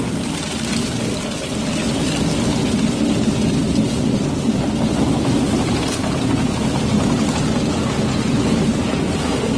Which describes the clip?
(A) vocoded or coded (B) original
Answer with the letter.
B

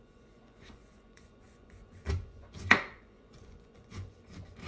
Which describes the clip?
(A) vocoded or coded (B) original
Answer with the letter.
A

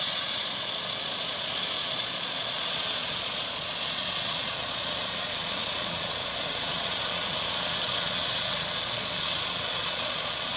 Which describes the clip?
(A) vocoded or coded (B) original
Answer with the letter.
A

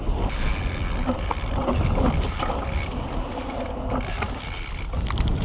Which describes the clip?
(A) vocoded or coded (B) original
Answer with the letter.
B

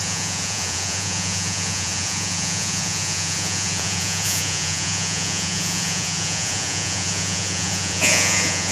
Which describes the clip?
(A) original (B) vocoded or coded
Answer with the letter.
B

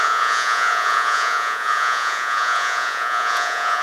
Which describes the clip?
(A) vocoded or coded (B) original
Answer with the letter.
A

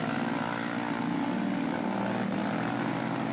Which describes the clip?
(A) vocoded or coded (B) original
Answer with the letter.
B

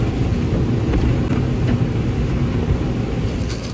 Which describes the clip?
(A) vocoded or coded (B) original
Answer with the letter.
B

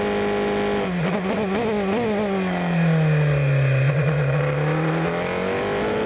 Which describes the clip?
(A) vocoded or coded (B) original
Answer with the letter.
B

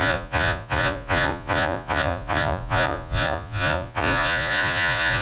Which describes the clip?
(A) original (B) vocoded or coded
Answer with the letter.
B